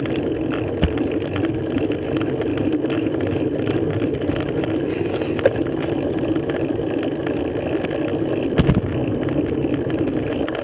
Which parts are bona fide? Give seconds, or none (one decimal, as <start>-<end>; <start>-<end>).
0.0-10.6